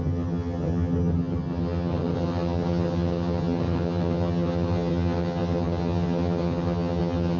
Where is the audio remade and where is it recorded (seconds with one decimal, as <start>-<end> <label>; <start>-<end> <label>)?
0.0-7.4 remade